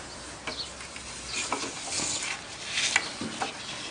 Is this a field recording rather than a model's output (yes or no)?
yes